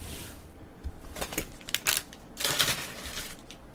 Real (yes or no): no